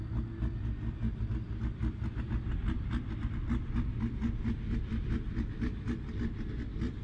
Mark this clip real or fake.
real